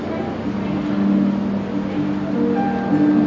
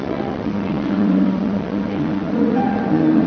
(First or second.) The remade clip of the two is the second